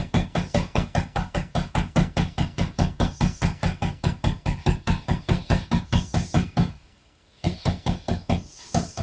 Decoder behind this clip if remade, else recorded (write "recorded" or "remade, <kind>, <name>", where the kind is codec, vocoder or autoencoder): remade, codec, SNAC